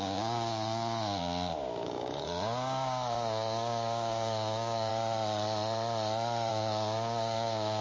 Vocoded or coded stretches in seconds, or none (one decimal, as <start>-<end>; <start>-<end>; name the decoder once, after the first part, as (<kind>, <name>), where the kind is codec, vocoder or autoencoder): 0.0-4.9 (codec, DAC); 6.5-7.8

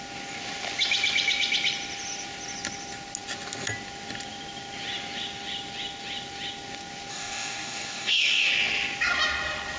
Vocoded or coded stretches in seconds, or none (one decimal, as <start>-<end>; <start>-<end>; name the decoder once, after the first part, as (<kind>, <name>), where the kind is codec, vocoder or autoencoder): 7.1-8.5 (codec, DAC)

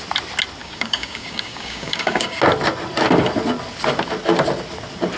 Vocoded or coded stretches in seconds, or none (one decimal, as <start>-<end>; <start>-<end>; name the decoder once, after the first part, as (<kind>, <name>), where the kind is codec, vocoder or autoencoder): 0.6-2.4 (codec, DAC)

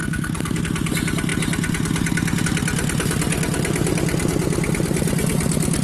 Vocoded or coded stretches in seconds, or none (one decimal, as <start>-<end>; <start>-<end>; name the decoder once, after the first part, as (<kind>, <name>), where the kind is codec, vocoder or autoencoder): 0.0-0.6 (codec, DAC)

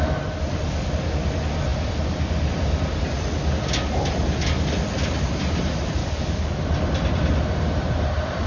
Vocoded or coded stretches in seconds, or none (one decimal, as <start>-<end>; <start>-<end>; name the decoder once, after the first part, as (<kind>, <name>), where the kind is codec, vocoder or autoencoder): 6.0-6.6 (codec, DAC)

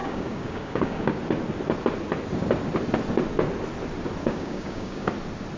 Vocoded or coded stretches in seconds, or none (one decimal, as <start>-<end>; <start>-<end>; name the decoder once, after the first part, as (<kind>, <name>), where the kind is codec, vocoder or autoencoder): 0.0-1.2 (codec, DAC); 4.2-5.1

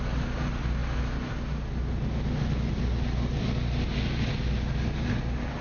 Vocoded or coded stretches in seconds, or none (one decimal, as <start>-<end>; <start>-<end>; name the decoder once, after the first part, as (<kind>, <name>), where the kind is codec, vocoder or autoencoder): none

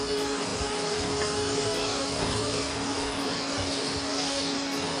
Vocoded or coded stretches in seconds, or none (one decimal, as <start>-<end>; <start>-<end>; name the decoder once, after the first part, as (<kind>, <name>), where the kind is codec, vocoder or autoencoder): 0.0-5.0 (codec, DAC)